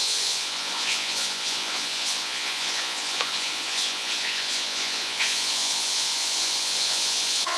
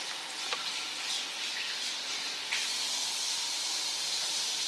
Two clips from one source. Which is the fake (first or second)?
first